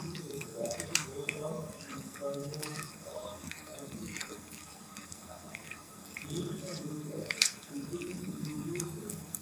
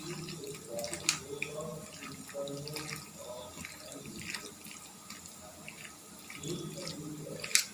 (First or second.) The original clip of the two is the second